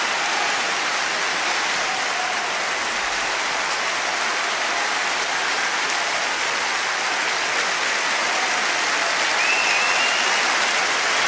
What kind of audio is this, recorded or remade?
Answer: recorded